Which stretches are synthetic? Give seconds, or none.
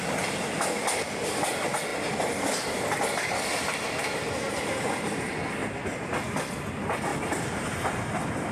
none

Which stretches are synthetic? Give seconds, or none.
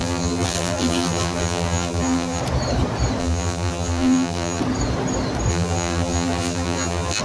0.0-2.4; 3.2-4.6; 5.5-7.2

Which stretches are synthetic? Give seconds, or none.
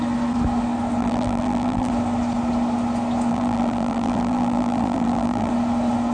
1.0-1.9; 3.3-5.5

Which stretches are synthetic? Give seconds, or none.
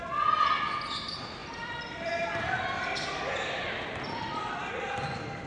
1.4-4.7